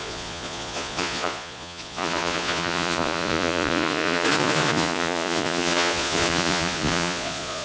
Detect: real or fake fake